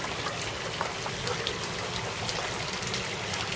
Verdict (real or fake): real